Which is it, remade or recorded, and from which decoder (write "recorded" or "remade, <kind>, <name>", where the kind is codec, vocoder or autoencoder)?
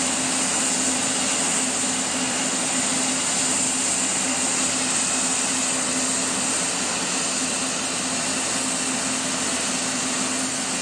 recorded